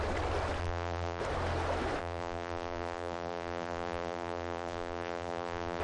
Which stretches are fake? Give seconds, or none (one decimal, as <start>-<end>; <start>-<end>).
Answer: 0.6-1.2; 2.0-5.8